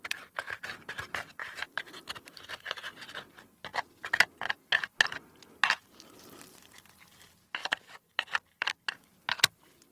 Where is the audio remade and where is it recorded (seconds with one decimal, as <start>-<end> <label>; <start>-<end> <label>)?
0.0-1.4 recorded; 1.4-3.1 remade; 3.1-7.6 recorded; 7.6-8.7 remade; 8.7-9.9 recorded